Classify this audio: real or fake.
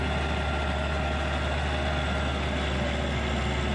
real